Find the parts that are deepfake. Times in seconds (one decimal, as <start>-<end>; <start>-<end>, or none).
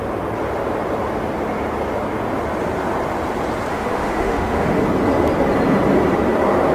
3.7-4.8